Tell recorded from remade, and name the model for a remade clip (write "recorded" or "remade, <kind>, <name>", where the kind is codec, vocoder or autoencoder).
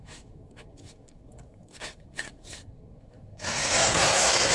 remade, codec, SNAC